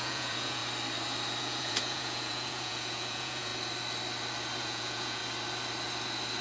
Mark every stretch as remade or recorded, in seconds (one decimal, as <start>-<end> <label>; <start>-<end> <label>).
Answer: 0.0-0.6 remade; 0.6-1.4 recorded; 1.4-3.5 remade; 3.5-4.6 recorded; 4.6-5.2 remade; 5.2-6.4 recorded